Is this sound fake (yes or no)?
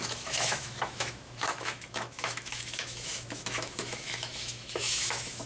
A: yes